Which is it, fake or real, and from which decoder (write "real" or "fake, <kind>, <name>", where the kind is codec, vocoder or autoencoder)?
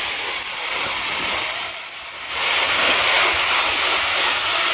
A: real